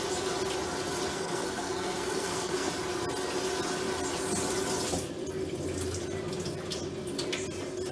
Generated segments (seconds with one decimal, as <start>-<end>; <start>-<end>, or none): 1.1-2.7